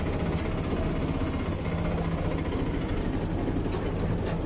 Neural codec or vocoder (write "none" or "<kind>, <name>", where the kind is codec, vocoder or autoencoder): none